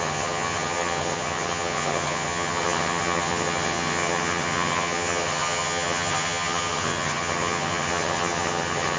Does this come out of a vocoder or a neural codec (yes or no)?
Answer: yes